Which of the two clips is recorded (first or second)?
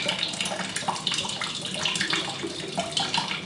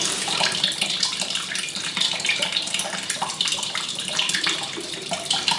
first